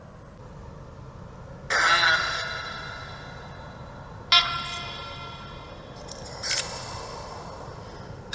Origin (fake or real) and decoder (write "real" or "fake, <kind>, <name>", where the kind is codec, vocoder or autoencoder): real